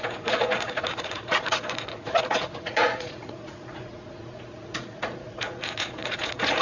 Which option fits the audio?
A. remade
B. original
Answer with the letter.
A